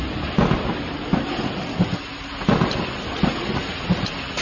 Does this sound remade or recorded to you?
recorded